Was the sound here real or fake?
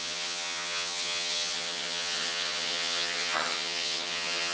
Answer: fake